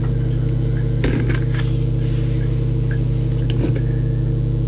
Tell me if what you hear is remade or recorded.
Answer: recorded